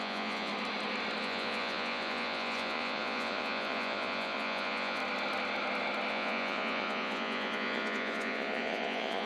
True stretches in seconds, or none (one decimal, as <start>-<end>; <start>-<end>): 0.5-1.2; 5.0-6.1